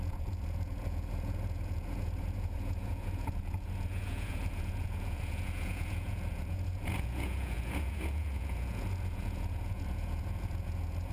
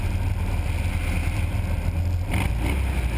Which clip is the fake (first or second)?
first